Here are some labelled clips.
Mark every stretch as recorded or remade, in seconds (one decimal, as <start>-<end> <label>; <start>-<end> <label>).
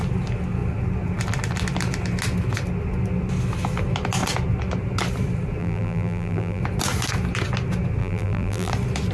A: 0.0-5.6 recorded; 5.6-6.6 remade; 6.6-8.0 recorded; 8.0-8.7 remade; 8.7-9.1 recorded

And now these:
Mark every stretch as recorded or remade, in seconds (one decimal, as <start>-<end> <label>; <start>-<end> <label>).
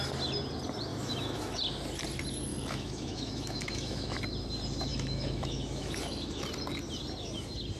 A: 0.0-0.9 recorded; 0.9-1.6 remade; 1.6-2.5 recorded; 2.5-4.2 remade; 4.2-4.9 recorded; 4.9-6.4 remade; 6.4-7.8 recorded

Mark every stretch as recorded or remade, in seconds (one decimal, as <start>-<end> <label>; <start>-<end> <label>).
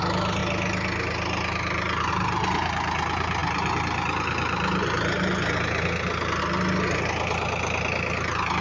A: 0.0-8.6 recorded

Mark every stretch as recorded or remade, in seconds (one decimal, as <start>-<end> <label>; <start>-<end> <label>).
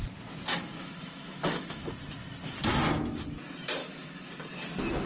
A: 0.0-0.5 recorded; 0.5-1.9 remade; 1.9-3.8 recorded; 3.8-4.3 remade; 4.3-5.1 recorded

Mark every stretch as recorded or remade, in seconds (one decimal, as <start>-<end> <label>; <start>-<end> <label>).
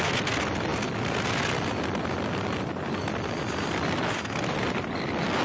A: 0.0-5.4 recorded